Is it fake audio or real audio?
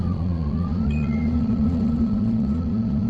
fake